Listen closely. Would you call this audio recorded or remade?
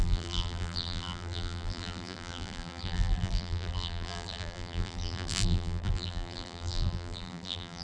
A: remade